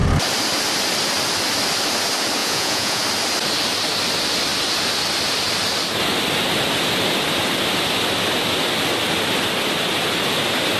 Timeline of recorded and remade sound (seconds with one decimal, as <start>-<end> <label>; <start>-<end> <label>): 0.0-2.4 recorded; 2.4-3.0 remade; 3.0-10.8 recorded